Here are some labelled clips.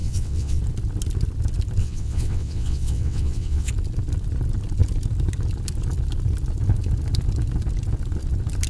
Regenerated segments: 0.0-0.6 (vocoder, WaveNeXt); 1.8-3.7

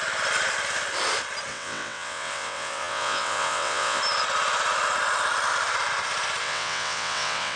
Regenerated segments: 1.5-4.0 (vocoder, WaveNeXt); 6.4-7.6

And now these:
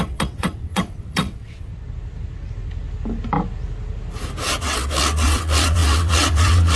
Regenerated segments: 0.0-1.7 (vocoder, WaveNeXt); 4.6-6.8

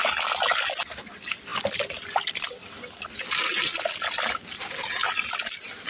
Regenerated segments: none

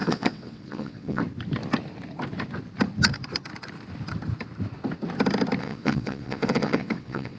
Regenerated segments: 0.0-1.2 (vocoder, WaveNeXt); 5.6-7.4

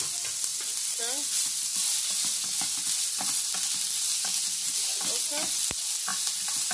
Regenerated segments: none